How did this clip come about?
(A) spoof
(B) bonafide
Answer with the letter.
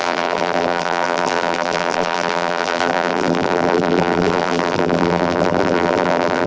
A